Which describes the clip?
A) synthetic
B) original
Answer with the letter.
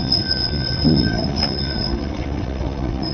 A